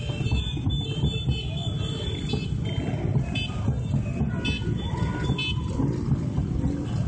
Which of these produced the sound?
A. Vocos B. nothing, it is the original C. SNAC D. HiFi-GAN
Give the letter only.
B